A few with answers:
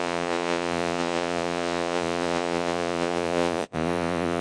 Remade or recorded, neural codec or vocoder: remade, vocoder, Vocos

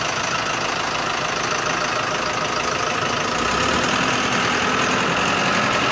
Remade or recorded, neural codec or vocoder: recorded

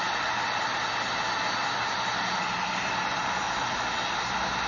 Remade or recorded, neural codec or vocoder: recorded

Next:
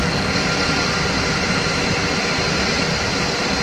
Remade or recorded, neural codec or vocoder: recorded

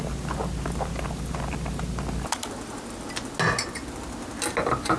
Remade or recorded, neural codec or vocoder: recorded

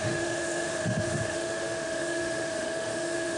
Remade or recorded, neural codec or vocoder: remade, autoencoder, DAC-VAE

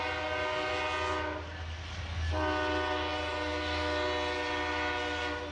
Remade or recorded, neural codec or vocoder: recorded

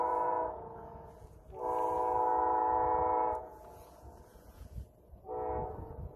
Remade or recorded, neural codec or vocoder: remade, vocoder, Vocos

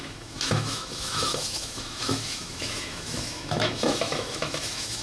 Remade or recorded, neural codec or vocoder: remade, autoencoder, DAC-VAE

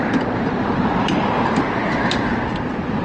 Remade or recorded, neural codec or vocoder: remade, vocoder, BigVGAN v2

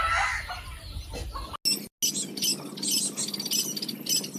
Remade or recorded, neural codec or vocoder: recorded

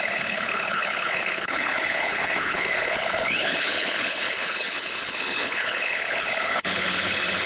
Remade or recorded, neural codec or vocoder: remade, codec, HILCodec